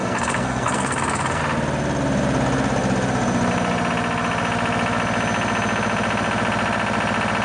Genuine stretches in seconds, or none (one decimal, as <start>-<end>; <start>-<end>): 1.4-7.4